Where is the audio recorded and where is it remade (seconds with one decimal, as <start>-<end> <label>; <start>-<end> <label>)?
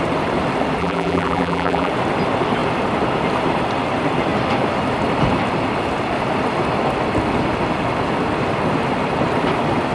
0.0-0.8 recorded; 0.8-1.9 remade; 1.9-9.9 recorded